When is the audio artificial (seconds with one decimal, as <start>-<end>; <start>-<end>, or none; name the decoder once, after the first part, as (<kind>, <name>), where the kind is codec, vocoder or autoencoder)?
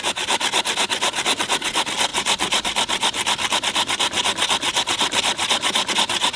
none